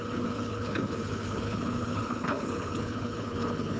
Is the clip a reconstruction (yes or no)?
yes